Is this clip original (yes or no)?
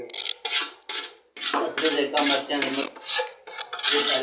yes